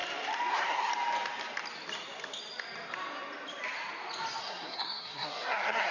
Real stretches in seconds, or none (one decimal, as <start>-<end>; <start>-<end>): 0.0-0.5; 0.9-4.4